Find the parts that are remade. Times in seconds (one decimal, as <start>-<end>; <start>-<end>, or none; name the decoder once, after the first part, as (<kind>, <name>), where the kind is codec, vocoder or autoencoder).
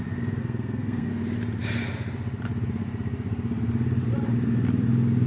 0.4-1.1 (codec, SNAC)